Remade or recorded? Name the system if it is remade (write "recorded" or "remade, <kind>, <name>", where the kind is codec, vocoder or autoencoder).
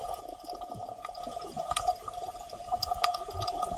remade, vocoder, Vocos